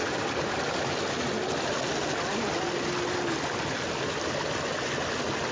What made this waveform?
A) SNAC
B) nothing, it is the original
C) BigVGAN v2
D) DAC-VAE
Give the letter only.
B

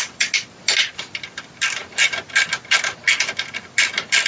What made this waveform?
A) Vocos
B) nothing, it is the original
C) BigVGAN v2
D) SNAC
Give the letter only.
B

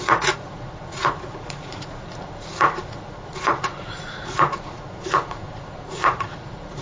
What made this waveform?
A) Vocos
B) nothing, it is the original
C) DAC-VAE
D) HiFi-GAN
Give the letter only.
A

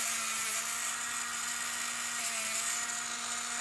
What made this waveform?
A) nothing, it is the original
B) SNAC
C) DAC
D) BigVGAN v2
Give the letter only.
A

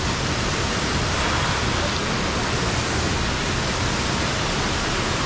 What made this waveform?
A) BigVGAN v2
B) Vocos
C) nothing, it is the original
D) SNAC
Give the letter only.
C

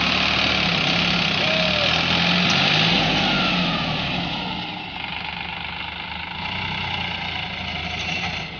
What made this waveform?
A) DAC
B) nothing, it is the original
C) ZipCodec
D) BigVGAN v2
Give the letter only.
B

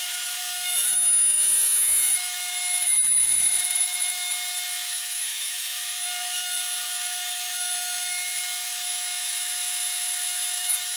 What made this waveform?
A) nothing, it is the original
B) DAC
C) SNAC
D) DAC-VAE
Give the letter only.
D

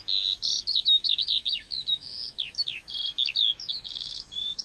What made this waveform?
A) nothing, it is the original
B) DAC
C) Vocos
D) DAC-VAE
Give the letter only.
D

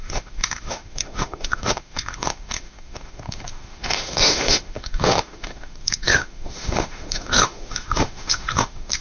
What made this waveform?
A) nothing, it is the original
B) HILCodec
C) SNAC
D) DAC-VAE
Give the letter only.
D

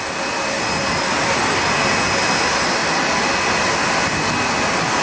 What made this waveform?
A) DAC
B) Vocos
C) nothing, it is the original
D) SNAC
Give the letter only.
C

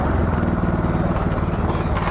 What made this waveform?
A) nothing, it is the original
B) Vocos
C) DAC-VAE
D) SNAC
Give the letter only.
A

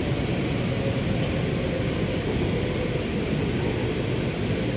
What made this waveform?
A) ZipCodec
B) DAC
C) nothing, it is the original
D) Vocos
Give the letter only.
C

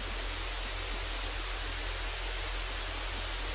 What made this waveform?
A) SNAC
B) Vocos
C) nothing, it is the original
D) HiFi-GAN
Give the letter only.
C